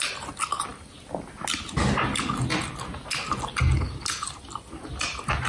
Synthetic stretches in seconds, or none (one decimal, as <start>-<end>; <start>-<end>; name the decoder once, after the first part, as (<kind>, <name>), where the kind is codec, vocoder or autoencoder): none